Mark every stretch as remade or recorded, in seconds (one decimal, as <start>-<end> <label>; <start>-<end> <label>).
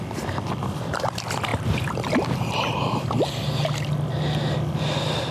0.0-5.3 recorded